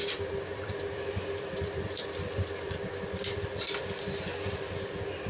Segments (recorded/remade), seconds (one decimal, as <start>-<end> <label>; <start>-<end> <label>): 0.0-2.8 remade; 2.8-5.3 recorded